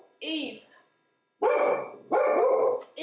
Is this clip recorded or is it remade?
recorded